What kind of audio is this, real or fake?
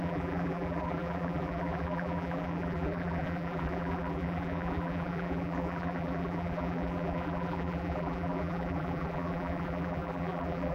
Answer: fake